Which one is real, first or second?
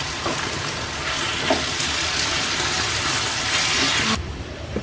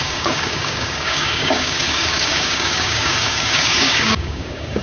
first